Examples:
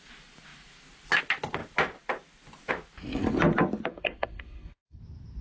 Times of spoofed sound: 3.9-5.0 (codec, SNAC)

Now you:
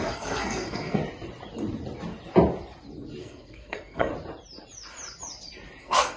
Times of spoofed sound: 0.0-1.0 (codec, SNAC); 3.2-4.1; 5.8-6.2